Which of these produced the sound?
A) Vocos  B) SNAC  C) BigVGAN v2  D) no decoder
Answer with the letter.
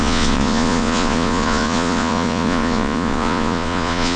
A